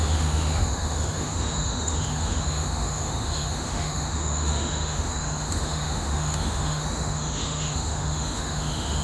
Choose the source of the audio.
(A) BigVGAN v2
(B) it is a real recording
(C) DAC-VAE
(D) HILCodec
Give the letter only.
C